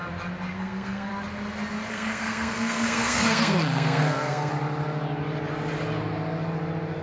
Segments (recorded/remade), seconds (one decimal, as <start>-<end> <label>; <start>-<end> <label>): 0.0-0.5 recorded; 0.5-1.1 remade; 1.1-1.9 recorded; 1.9-4.5 remade; 4.5-7.0 recorded